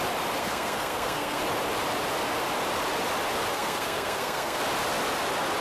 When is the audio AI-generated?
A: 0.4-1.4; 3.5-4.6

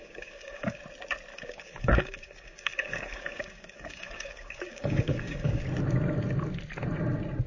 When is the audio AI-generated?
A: 0.0-0.8; 1.3-5.6

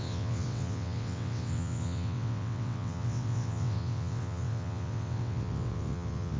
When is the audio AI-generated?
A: 0.0-6.4

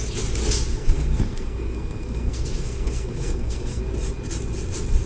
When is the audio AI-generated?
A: 0.7-3.8

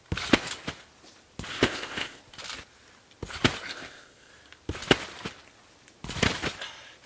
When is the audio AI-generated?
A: 1.5-2.2; 3.7-4.3

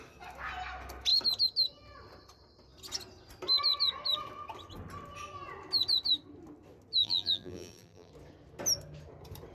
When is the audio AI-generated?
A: 7.0-8.1